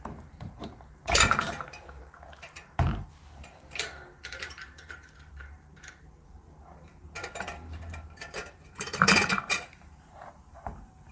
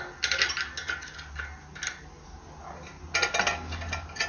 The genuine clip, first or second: second